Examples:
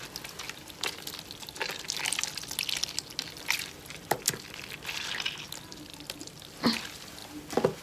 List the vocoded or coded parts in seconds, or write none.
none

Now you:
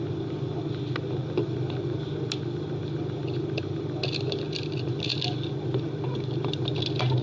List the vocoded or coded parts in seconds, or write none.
none

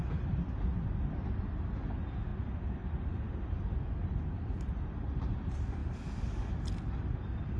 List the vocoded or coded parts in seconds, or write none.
none

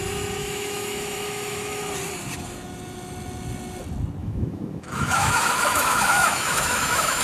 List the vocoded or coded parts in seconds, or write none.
0.4-1.8 (autoencoder, DAC-VAE); 4.2-7.2

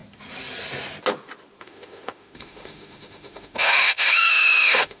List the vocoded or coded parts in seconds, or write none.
1.6-5.0 (autoencoder, DAC-VAE)

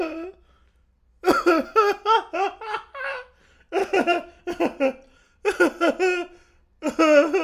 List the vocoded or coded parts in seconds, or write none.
3.8-4.4 (autoencoder, DAC-VAE)

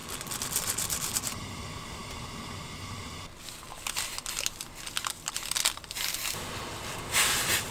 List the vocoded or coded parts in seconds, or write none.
none